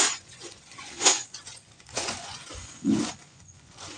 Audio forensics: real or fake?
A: fake